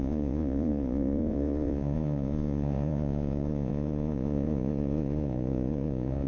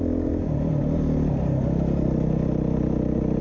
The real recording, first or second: second